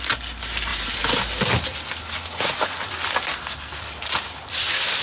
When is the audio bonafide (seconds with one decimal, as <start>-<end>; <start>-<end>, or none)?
0.0-3.3; 3.8-5.0

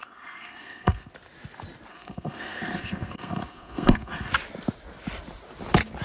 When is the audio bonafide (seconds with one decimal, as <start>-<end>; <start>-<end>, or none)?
1.1-1.9; 4.3-6.0